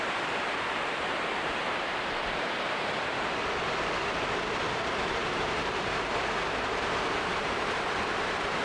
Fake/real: fake